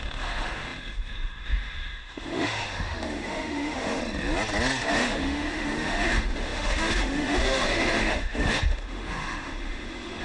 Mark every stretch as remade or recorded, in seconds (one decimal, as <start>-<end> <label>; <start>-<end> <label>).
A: 0.0-4.0 remade; 4.0-4.8 recorded; 4.8-10.2 remade